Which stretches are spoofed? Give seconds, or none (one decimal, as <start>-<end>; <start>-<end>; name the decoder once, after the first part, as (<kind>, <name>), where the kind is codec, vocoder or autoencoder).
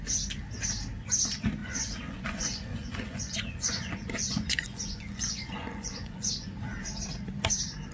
1.6-6.3 (vocoder, Vocos)